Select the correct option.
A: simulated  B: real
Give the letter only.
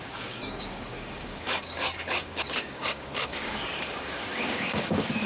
A